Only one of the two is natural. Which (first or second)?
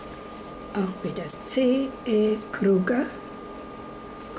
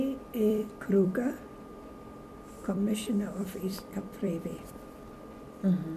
first